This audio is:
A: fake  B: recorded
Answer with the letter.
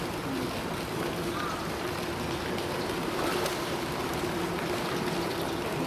B